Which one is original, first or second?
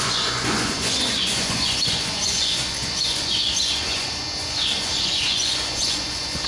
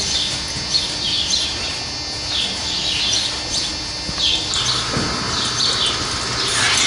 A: second